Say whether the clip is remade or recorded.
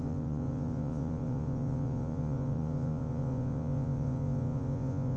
remade